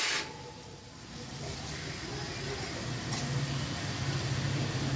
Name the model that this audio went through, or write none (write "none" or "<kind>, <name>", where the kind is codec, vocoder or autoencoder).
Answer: none